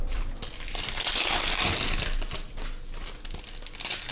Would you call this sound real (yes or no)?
yes